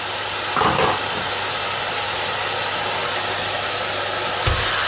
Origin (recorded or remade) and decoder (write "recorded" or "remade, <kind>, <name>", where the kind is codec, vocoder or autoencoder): recorded